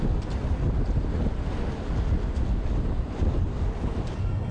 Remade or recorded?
recorded